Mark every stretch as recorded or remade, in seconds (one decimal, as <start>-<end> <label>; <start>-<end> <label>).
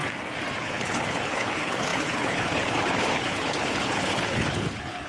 0.0-0.6 recorded; 0.6-5.1 remade